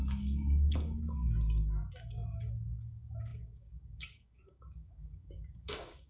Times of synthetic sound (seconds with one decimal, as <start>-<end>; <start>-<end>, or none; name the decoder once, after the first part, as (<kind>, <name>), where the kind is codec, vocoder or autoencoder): 0.0-6.1 (codec, DAC)